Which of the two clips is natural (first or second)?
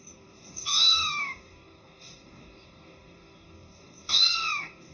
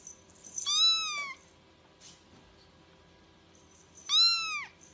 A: second